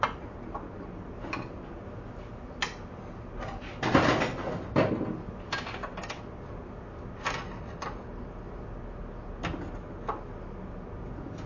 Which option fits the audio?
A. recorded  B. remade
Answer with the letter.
A